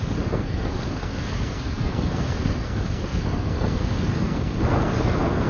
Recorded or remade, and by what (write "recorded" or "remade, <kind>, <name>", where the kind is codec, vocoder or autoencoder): remade, codec, SNAC